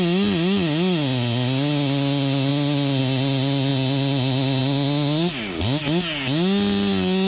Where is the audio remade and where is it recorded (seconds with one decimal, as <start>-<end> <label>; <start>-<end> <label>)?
0.0-7.3 recorded